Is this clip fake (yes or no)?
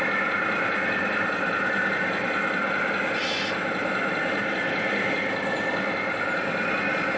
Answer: no